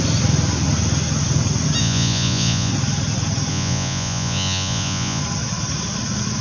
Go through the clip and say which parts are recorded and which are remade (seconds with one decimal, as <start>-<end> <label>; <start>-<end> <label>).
0.0-1.8 recorded; 1.8-2.7 remade; 2.7-3.5 recorded; 3.5-5.2 remade; 5.2-6.4 recorded